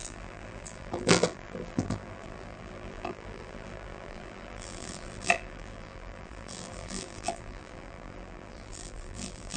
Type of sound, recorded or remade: remade